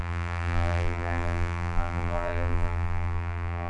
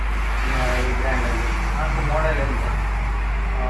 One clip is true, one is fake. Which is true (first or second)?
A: second